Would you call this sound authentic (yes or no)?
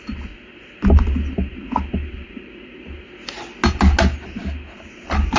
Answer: yes